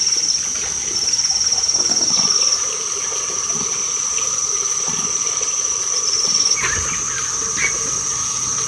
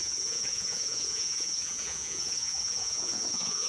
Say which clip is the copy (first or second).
second